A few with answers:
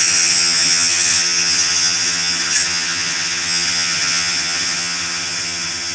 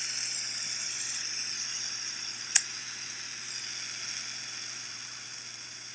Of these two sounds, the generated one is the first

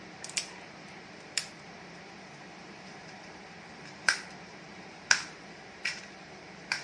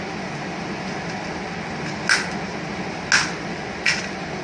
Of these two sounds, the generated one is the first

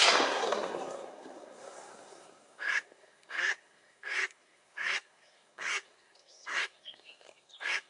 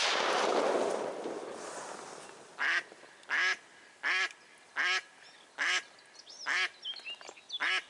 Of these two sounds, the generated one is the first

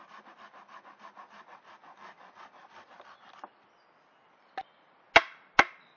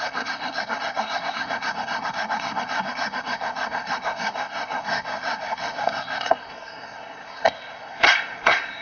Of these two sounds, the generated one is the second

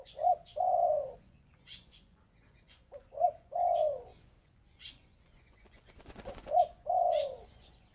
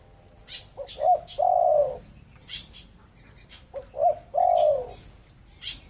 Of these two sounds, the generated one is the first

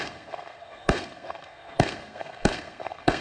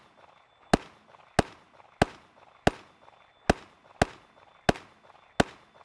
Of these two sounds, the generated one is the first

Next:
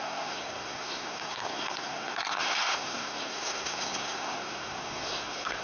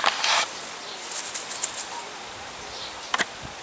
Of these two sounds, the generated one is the first